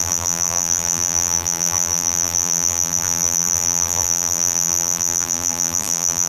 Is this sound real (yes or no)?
no